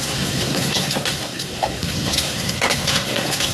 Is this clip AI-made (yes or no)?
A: yes